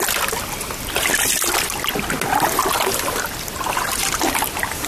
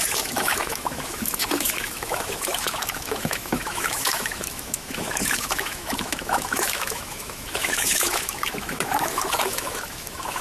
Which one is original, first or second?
first